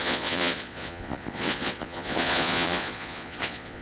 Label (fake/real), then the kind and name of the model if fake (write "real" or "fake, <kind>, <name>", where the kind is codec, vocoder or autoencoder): fake, vocoder, Vocos